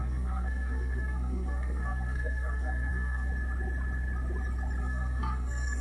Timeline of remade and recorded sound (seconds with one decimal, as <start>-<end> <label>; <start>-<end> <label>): 0.0-3.3 remade; 3.3-4.8 recorded; 4.8-5.8 remade